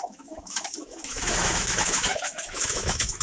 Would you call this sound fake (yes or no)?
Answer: yes